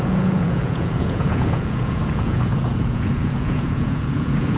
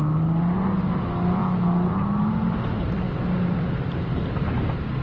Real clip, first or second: second